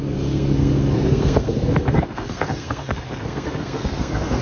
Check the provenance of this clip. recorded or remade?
remade